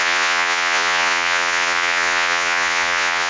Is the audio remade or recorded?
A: remade